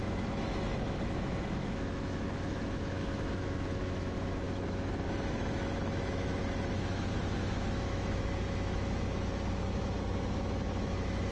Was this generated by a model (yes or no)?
yes